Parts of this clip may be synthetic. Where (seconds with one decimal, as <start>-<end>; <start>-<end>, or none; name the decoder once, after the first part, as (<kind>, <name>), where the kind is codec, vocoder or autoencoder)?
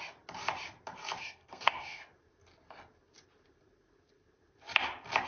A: 1.2-2.0 (codec, SNAC)